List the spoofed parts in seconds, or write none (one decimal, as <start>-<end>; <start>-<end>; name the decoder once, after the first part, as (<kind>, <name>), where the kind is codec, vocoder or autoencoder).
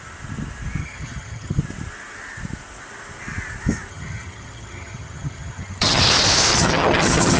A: 0.8-1.6 (vocoder, HiFi-GAN); 3.9-6.0; 6.5-7.4